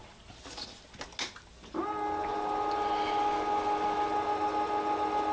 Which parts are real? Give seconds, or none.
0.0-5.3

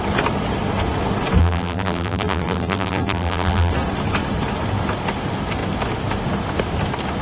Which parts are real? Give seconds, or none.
0.0-1.4; 3.7-7.2

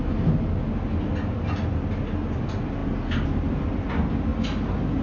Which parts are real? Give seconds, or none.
0.0-5.0

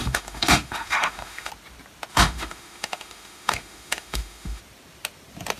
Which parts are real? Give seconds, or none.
1.5-2.1; 4.6-5.6

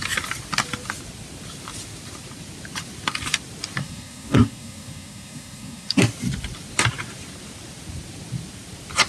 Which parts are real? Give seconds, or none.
0.0-3.8; 6.0-9.1